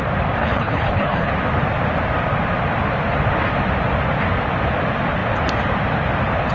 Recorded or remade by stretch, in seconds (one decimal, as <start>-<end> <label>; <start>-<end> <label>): 0.0-0.4 recorded; 0.4-1.3 remade; 1.3-6.5 recorded